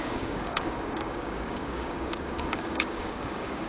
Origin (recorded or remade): remade